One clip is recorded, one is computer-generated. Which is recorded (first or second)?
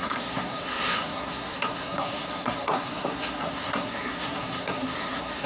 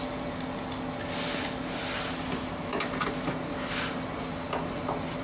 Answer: second